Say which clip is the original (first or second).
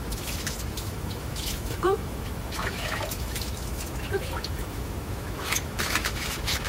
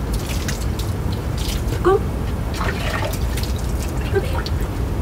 second